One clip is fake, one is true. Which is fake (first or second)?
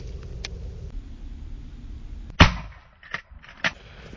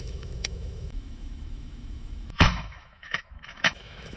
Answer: second